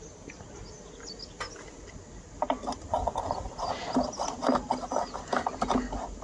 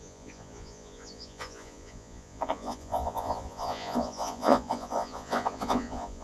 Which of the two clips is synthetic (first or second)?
second